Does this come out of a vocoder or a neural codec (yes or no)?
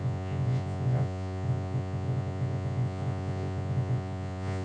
yes